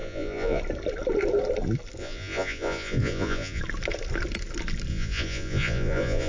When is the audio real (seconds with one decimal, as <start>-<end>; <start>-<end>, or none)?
0.6-2.0; 3.6-4.9